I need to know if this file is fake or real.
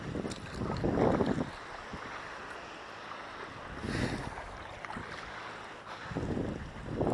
real